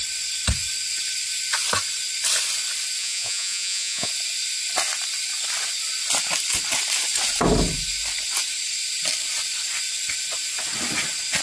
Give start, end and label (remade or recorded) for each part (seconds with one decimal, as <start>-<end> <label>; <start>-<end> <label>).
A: 0.0-3.0 recorded; 3.0-4.1 remade; 4.1-11.4 recorded